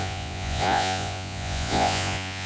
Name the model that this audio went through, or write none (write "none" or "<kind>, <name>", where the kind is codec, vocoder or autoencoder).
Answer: vocoder, Vocos